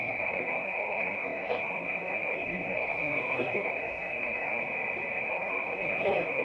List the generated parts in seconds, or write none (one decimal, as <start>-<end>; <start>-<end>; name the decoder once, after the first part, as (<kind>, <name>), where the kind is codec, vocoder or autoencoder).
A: 0.0-4.6 (codec, SNAC); 5.3-6.4